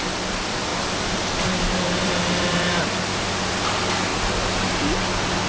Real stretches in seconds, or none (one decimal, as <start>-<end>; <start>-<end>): 0.0-0.7; 2.8-5.5